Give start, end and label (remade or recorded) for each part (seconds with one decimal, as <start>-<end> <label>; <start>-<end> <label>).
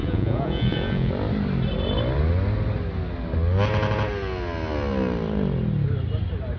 0.0-1.1 remade; 1.1-6.6 recorded